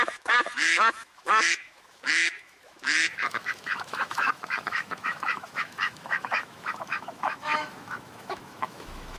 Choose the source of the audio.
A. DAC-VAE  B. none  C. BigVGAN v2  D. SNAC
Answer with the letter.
A